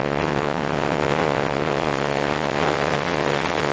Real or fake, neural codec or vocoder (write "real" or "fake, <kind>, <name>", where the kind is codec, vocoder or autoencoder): fake, vocoder, WaveNeXt